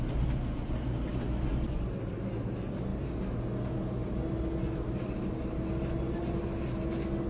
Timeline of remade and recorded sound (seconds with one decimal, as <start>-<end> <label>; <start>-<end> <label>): 0.0-7.3 recorded